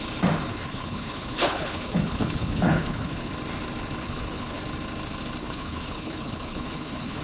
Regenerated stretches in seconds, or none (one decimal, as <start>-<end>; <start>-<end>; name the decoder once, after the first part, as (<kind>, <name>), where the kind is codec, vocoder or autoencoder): 0.5-3.3 (codec, HILCodec); 4.0-4.6; 5.4-7.2